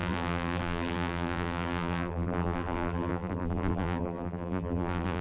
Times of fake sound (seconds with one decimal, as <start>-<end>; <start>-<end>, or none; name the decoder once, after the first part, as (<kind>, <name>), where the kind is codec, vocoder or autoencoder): 0.0-5.2 (vocoder, BigVGAN v2)